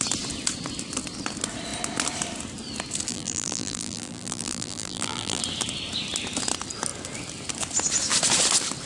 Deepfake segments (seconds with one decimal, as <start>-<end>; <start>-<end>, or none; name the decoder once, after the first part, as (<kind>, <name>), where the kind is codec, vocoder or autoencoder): 3.1-5.4 (vocoder, BigVGAN v2)